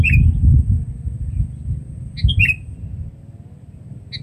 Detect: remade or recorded recorded